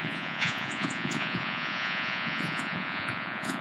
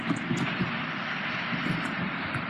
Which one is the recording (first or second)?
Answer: second